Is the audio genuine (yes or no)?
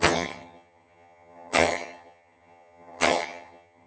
no